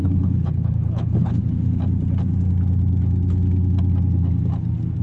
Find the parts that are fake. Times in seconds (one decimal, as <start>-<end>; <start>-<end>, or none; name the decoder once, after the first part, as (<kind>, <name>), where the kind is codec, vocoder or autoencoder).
0.0-1.4 (codec, HILCodec)